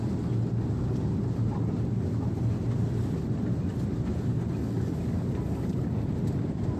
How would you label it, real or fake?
fake